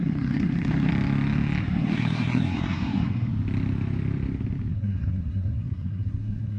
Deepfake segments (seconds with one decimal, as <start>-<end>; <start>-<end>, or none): 0.0-0.9; 1.6-3.3; 4.7-6.6